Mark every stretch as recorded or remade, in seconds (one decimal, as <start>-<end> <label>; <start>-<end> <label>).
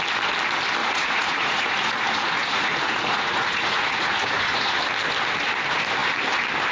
0.0-0.8 recorded; 0.8-4.8 remade; 4.8-6.7 recorded